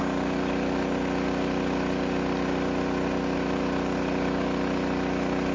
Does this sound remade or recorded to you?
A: recorded